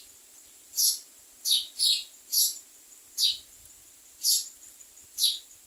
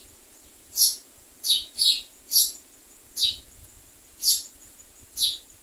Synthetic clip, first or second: second